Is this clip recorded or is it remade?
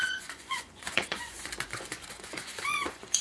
remade